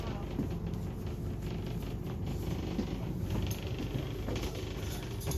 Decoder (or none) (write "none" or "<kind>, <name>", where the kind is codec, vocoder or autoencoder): none